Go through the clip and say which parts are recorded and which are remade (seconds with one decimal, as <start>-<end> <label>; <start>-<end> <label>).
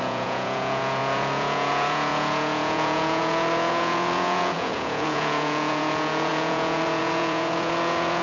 0.0-8.2 remade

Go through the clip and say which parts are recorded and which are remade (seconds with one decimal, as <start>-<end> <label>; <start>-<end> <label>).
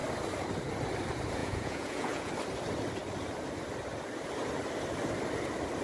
0.0-1.4 recorded; 1.4-2.3 remade; 2.3-5.8 recorded